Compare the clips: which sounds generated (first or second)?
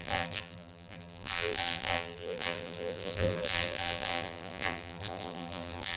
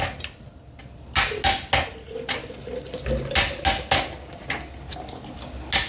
first